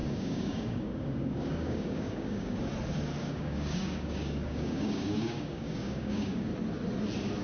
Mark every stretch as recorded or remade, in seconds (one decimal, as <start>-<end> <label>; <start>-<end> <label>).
0.0-2.7 remade; 2.7-3.2 recorded; 3.2-6.5 remade; 6.5-7.4 recorded

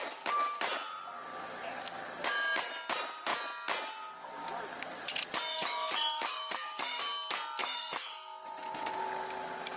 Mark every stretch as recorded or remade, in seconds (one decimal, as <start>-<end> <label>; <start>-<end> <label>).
0.0-5.5 recorded; 5.5-7.0 remade; 7.0-7.6 recorded; 7.6-9.0 remade; 9.0-9.8 recorded

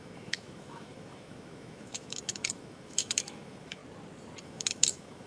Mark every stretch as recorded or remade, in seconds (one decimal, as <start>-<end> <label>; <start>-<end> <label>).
0.0-3.8 remade; 3.8-4.4 recorded; 4.4-5.3 remade

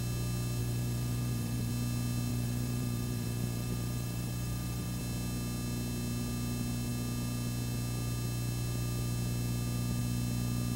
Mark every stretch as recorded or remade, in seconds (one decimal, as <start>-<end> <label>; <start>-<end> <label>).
0.0-0.6 recorded; 0.6-1.7 remade; 1.7-2.3 recorded; 2.3-5.0 remade; 5.0-10.8 recorded

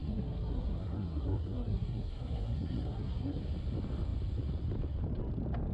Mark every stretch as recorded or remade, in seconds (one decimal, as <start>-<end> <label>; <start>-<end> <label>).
0.0-3.4 remade; 3.4-5.7 recorded

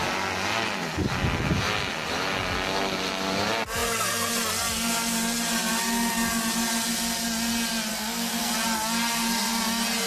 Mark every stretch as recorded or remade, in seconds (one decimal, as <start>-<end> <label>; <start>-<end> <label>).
0.0-7.9 recorded; 7.9-8.5 remade; 8.5-10.1 recorded

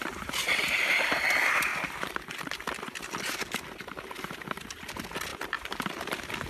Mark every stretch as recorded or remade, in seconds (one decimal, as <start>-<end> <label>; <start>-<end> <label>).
0.0-6.5 recorded

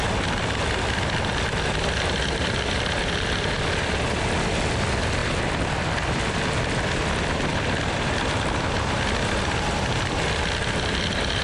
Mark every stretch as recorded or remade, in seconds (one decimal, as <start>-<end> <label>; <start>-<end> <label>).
0.0-11.4 recorded